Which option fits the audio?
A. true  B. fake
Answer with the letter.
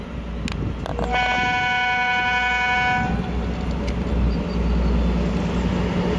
A